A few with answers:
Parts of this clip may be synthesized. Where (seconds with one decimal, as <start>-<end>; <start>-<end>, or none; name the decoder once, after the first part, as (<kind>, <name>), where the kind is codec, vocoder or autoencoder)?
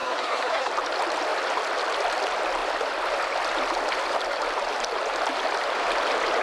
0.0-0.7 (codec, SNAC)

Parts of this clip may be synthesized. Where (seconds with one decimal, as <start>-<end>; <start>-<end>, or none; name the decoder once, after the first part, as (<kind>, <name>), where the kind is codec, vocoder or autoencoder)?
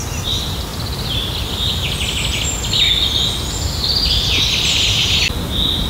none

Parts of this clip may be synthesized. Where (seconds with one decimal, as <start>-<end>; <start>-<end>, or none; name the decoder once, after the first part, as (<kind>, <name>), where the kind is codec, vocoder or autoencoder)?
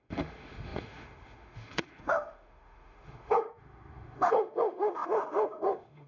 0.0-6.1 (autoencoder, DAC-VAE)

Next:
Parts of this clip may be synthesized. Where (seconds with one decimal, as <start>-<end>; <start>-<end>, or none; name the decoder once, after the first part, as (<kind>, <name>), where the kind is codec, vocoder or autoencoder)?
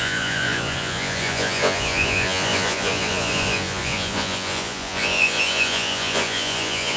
0.0-7.0 (vocoder, Vocos)